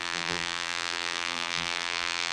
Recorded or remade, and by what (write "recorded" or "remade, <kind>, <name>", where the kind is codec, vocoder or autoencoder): remade, vocoder, BigVGAN v2